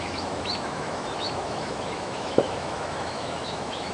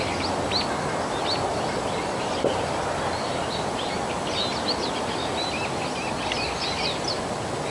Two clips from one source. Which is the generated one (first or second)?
first